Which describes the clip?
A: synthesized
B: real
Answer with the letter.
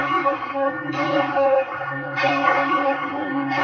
A